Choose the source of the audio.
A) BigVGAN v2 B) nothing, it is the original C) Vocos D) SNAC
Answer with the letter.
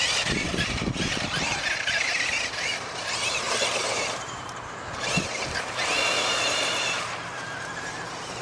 A